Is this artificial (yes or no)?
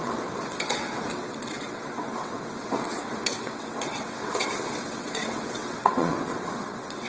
yes